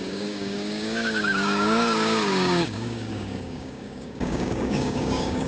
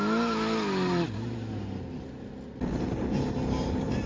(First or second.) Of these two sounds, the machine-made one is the first